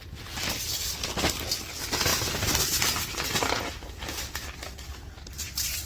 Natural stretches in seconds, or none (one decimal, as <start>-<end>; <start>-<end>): 0.0-5.9